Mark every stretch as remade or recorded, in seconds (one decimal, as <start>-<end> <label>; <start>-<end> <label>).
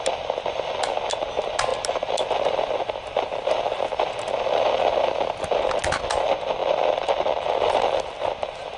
0.0-8.8 recorded